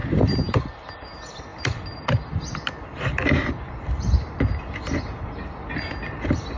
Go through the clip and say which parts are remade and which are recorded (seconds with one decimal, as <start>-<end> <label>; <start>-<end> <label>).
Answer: 0.0-6.6 recorded